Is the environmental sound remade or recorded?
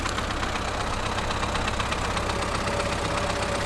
recorded